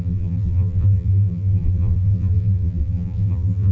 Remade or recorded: remade